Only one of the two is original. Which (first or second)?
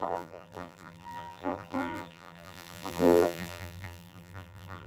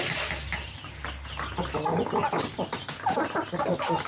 second